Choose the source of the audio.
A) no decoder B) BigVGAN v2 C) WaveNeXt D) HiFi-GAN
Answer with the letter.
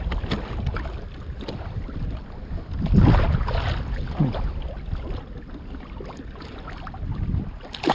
A